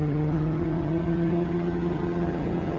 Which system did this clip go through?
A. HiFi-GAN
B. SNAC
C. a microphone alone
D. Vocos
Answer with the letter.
A